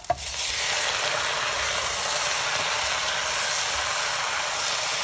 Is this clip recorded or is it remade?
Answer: recorded